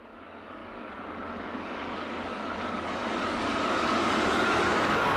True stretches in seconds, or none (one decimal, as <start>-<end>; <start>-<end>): none